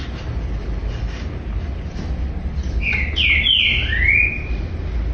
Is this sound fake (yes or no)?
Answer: no